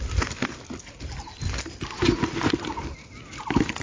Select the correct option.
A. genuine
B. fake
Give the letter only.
A